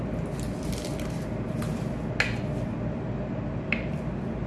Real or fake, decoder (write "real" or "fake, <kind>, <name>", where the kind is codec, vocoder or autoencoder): real